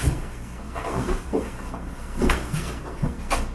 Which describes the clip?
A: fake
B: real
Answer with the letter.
A